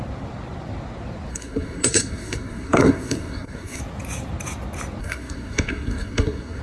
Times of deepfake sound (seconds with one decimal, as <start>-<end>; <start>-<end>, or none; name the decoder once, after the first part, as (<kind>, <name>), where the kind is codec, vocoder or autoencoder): 1.3-3.8 (codec, SNAC); 5.0-6.6